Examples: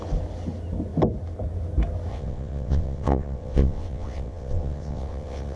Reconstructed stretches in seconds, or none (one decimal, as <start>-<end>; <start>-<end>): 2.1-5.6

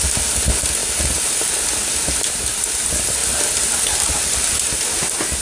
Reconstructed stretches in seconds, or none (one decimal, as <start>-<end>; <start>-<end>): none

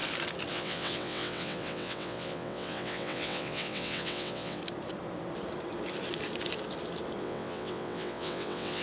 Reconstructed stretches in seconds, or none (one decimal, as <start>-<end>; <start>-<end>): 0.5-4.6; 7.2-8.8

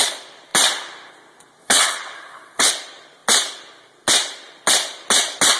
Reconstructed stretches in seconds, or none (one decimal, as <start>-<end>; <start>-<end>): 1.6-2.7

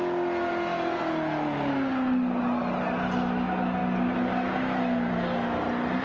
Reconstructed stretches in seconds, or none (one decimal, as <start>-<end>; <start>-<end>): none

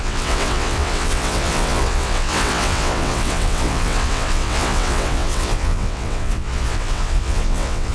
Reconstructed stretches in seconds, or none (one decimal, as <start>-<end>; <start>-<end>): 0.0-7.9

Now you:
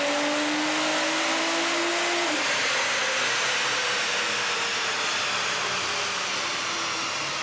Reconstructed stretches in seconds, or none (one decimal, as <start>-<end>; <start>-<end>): none

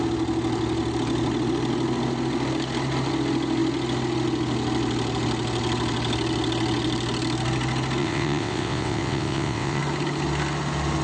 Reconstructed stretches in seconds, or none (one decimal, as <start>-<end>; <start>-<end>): 8.0-9.8